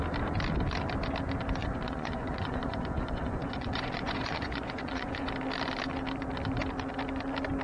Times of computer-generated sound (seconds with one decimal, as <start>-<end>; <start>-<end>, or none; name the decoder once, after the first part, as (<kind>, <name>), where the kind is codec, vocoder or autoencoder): 1.6-5.3 (vocoder, Vocos)

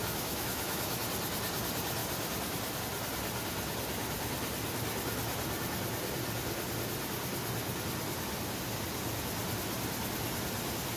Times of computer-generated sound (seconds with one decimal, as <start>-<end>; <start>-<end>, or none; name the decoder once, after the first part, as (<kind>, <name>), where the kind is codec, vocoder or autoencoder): 0.0-1.0 (autoencoder, DAC-VAE)